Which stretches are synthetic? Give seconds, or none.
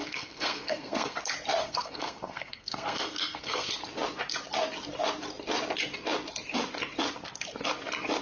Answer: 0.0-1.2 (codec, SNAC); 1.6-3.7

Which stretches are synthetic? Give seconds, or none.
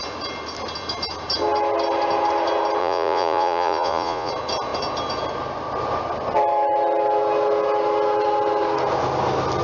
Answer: 2.8-4.3 (vocoder, Vocos)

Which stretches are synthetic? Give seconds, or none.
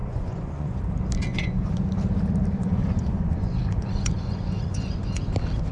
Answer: 0.0-0.8 (vocoder, Vocos); 1.3-1.8; 2.6-5.3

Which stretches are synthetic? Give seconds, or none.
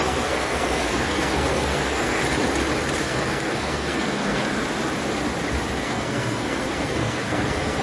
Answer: 0.0-2.2 (codec, SNAC); 3.0-4.4; 5.8-7.8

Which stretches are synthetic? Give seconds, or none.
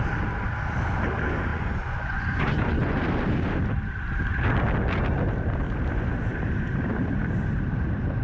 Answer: 1.5-3.0 (vocoder, Vocos)